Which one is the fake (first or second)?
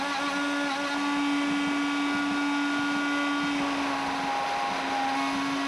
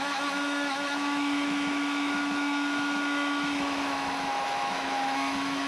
second